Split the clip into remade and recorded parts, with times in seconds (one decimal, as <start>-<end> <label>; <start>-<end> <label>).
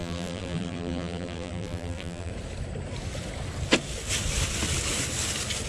0.0-2.3 remade; 2.3-5.7 recorded